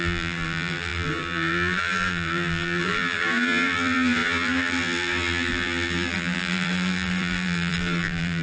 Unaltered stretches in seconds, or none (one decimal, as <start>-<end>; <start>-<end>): none